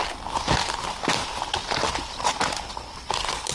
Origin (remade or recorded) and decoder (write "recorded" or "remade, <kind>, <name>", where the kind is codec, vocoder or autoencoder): recorded